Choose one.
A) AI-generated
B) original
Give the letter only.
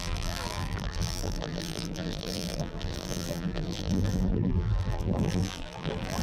A